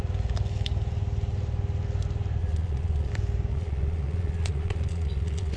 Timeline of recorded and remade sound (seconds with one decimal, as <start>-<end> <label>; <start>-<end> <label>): 0.0-2.4 recorded; 2.4-3.1 remade; 3.1-3.5 recorded; 3.5-5.6 remade